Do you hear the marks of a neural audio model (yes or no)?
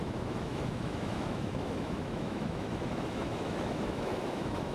yes